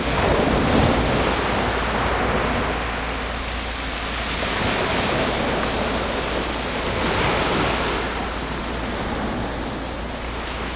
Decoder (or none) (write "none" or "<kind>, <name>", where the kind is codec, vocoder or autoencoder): none